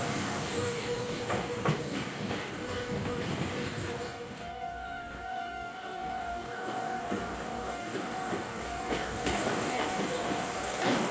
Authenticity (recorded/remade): remade